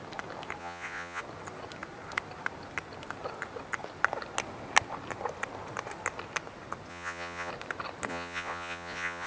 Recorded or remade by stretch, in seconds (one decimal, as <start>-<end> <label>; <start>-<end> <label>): 0.0-0.6 recorded; 0.6-1.2 remade; 1.2-6.9 recorded; 6.9-7.5 remade; 7.5-8.1 recorded; 8.1-9.3 remade